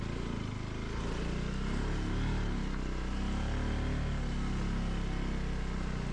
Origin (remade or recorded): recorded